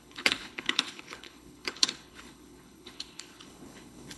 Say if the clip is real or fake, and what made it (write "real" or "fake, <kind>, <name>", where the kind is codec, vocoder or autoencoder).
fake, codec, HILCodec